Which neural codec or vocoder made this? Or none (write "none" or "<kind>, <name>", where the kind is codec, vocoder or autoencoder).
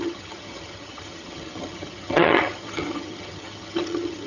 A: vocoder, HiFi-GAN